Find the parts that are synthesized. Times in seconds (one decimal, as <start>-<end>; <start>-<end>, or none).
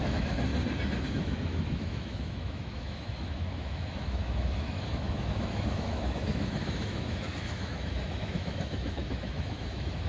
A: 0.0-0.5; 1.1-10.1